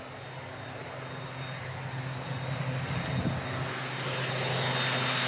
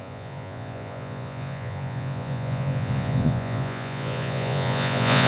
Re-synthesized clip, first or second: second